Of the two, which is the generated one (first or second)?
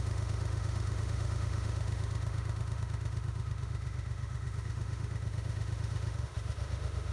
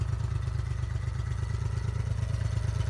first